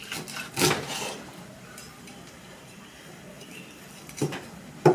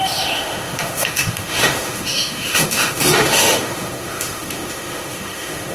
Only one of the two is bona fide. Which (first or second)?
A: first